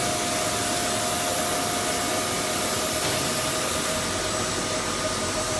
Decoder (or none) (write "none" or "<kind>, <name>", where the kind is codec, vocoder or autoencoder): none